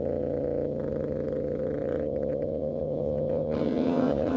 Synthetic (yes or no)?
yes